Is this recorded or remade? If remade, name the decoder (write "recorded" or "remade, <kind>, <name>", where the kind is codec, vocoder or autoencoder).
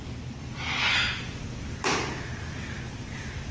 recorded